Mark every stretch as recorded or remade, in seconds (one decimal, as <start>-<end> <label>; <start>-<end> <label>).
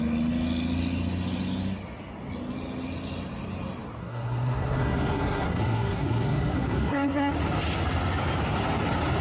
0.0-4.0 recorded; 4.0-7.3 remade; 7.3-9.2 recorded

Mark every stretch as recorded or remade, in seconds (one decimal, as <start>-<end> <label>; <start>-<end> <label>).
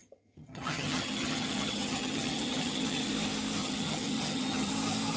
0.0-3.1 remade; 3.1-3.6 recorded; 3.6-4.7 remade; 4.7-5.2 recorded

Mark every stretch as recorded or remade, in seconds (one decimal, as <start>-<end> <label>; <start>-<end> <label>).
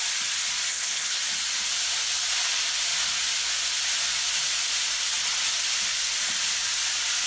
0.0-0.7 recorded; 0.7-1.2 remade; 1.2-7.3 recorded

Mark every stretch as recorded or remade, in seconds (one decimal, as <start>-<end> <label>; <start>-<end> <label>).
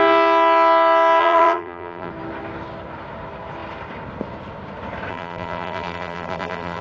0.0-1.2 recorded; 1.2-2.1 remade; 2.1-5.1 recorded; 5.1-6.8 remade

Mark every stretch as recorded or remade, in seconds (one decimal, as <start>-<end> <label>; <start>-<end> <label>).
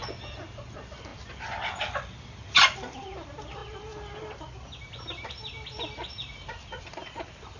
0.0-7.6 recorded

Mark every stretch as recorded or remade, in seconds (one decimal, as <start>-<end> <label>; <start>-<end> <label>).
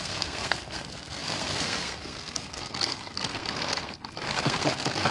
0.0-5.1 remade